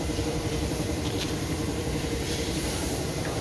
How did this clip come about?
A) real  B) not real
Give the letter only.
B